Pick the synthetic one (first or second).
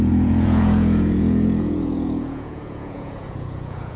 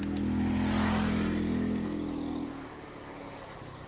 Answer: first